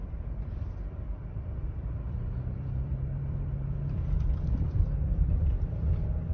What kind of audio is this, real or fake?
fake